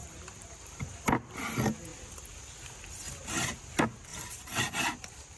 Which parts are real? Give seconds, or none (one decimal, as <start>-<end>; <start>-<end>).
1.0-4.1; 4.8-5.4